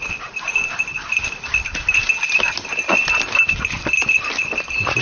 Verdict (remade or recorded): recorded